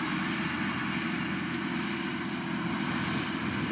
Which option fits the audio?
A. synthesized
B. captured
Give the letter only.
B